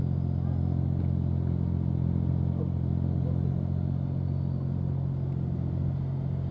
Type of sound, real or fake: real